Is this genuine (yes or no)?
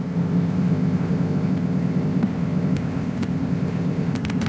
no